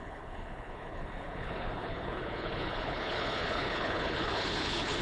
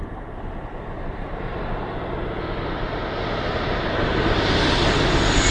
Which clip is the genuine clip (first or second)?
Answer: second